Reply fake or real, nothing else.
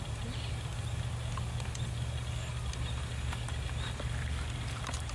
real